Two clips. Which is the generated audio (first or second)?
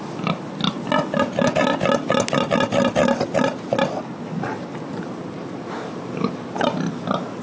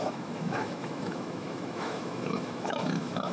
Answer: second